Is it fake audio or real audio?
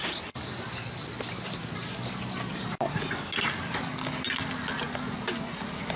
real